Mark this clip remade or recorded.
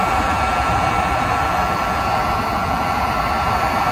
remade